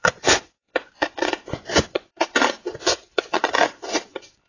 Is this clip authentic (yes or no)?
no